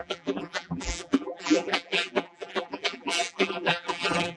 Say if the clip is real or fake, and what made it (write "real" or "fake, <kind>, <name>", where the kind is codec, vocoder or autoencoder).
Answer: fake, vocoder, BigVGAN v2